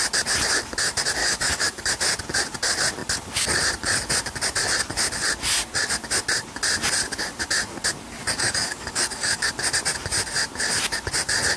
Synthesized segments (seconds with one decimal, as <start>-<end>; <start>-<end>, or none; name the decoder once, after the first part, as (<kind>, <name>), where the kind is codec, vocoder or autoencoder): 1.2-1.9 (codec, DAC); 8.4-9.5